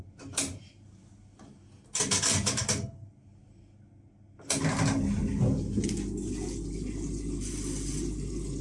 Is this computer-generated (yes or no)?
no